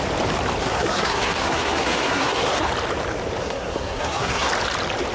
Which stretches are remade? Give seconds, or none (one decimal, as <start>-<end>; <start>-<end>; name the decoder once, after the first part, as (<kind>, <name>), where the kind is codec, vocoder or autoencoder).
0.6-2.7 (codec, SNAC); 3.4-4.5

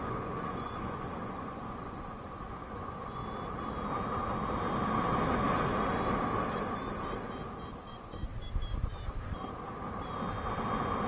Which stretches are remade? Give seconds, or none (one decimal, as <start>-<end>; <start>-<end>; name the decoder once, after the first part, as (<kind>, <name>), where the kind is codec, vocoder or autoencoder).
0.0-3.2 (vocoder, Vocos); 7.9-8.3

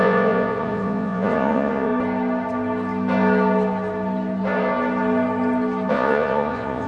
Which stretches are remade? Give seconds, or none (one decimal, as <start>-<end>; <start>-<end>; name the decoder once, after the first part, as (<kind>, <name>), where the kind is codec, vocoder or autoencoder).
0.0-1.9 (vocoder, Vocos); 5.9-6.9

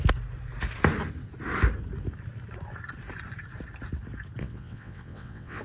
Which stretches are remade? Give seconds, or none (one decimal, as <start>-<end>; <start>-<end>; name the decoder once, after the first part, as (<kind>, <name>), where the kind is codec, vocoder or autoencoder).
4.4-5.6 (vocoder, WaveNeXt)

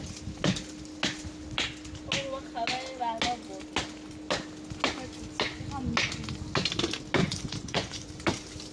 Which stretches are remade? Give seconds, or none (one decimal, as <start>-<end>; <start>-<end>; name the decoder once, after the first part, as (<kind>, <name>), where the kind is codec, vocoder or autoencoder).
7.2-8.1 (vocoder, Vocos)

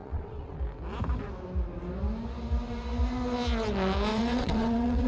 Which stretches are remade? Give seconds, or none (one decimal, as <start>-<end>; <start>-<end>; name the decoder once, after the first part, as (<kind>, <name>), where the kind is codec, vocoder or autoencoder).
0.0-0.6 (vocoder, WaveNeXt); 4.1-5.1

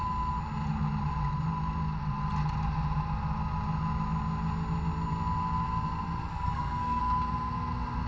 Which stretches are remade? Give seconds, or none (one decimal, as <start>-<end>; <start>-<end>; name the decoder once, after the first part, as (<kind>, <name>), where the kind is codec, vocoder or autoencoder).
6.3-7.0 (codec, SNAC)

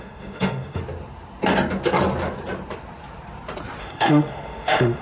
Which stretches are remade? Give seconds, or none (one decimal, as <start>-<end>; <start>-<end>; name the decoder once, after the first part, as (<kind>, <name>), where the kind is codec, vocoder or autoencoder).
0.0-0.8 (autoencoder, DAC-VAE); 3.8-5.0